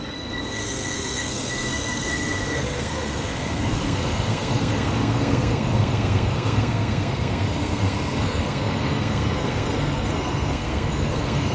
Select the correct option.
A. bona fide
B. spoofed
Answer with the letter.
B